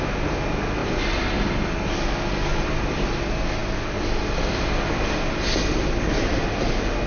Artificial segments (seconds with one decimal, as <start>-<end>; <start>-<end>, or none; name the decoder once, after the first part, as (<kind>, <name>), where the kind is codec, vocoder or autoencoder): 0.8-1.4 (vocoder, BigVGAN v2); 2.5-3.2